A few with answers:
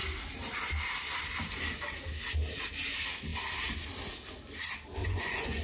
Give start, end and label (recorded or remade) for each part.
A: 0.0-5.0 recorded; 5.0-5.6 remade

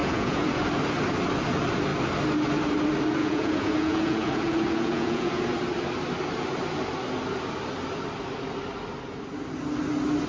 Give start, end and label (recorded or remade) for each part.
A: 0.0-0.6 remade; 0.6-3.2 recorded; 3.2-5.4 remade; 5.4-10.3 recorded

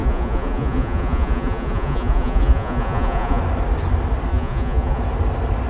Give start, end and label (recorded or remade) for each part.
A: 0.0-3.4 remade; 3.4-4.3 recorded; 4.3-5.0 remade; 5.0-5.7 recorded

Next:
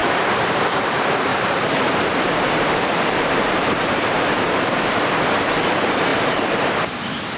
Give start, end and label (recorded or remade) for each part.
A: 0.0-0.6 remade; 0.6-1.3 recorded; 1.3-4.6 remade; 4.6-7.4 recorded

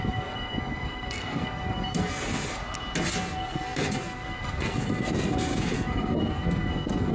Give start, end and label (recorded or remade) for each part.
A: 0.0-2.6 remade; 2.6-3.2 recorded; 3.2-7.1 remade